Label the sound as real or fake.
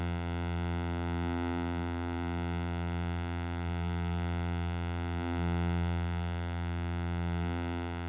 fake